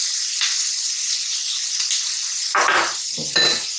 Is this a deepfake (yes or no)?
no